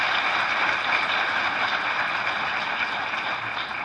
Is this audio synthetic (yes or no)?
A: no